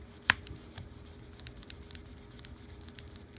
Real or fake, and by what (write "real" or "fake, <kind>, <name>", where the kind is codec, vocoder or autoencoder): real